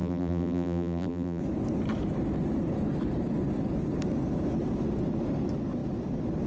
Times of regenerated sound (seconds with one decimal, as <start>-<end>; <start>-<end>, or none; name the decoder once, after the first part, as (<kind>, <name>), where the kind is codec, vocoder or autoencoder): 0.0-1.4 (vocoder, BigVGAN v2)